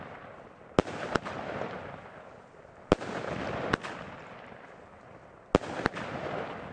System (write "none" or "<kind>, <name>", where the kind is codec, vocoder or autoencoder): none